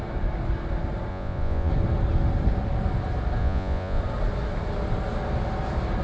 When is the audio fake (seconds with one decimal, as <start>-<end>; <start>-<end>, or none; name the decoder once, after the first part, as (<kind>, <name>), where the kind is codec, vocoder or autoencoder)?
1.1-1.7 (vocoder, Vocos); 3.4-4.0